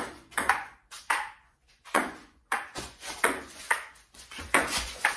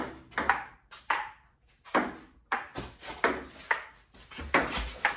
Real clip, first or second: second